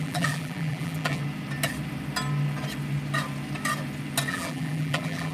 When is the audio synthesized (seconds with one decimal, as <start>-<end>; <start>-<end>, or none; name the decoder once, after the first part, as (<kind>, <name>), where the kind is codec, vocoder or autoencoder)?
0.0-1.2 (vocoder, BigVGAN v2); 4.3-5.3